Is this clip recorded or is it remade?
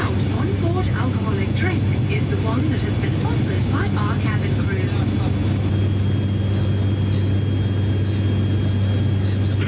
recorded